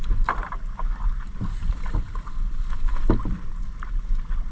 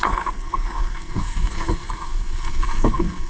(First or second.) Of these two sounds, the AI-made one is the second